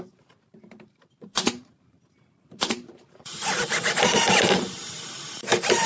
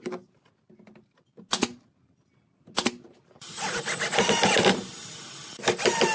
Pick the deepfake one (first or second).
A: first